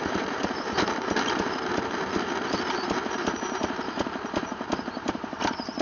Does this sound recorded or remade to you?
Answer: remade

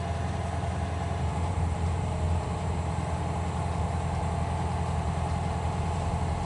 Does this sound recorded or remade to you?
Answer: recorded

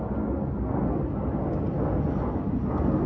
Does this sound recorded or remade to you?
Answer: recorded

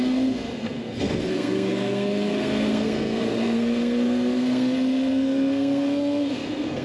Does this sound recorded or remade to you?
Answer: remade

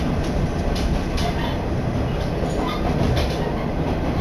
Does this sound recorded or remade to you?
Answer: recorded